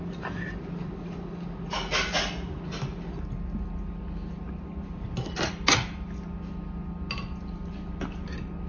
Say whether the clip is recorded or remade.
recorded